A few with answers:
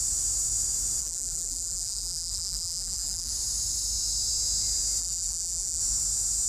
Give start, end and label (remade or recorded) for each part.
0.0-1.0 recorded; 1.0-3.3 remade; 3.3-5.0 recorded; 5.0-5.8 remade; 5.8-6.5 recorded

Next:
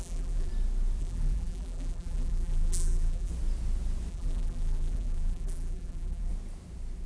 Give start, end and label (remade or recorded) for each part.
0.0-0.5 remade; 0.5-1.0 recorded; 1.0-3.3 remade; 3.3-4.1 recorded; 4.1-6.3 remade; 6.3-7.1 recorded

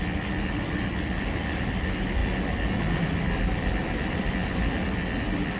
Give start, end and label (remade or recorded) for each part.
0.0-5.6 recorded

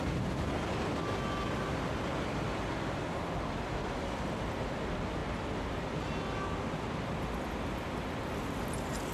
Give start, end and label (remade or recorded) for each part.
0.0-9.1 recorded

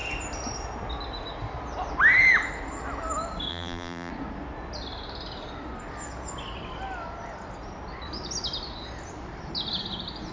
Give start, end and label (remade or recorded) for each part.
0.0-3.5 recorded; 3.5-4.1 remade; 4.1-10.3 recorded

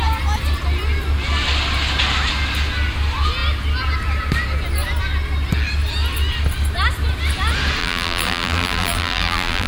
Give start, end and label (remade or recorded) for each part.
0.0-7.8 recorded; 7.8-9.7 remade

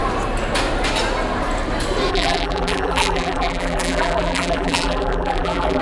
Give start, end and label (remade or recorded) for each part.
0.0-2.1 recorded; 2.1-5.8 remade

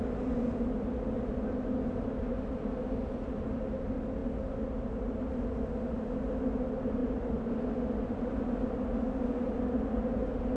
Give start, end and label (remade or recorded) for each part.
0.0-7.0 recorded; 7.0-7.5 remade; 7.5-10.6 recorded